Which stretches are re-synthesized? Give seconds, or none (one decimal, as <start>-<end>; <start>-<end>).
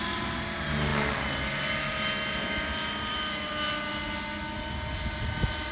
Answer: none